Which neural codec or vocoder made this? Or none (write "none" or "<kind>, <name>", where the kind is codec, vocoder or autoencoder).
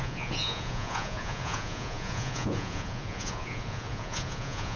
vocoder, Vocos